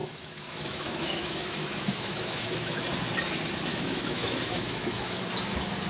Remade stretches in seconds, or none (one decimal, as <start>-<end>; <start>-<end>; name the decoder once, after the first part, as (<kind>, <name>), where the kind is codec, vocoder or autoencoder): 0.0-2.8 (autoencoder, DAC-VAE); 3.7-5.2